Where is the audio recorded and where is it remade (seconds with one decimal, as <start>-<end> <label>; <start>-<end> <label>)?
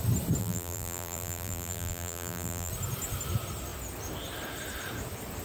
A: 0.0-0.4 recorded; 0.4-2.7 remade; 2.7-5.4 recorded